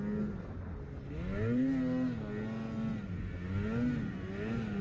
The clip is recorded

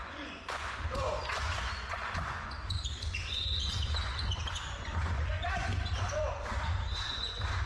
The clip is remade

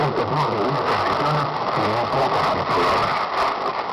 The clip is recorded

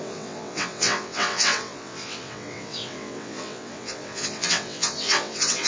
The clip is remade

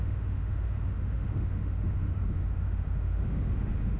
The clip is remade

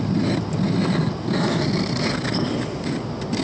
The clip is recorded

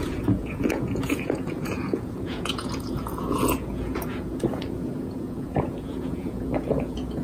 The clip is remade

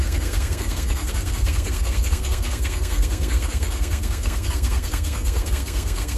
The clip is remade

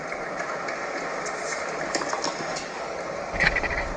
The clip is recorded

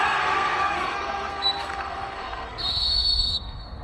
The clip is remade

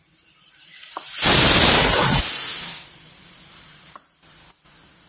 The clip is remade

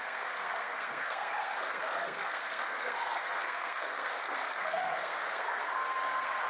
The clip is remade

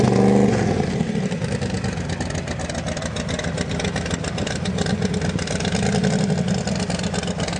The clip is recorded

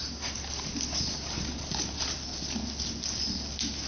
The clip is recorded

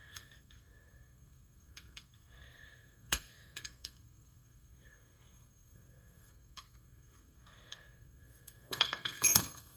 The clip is remade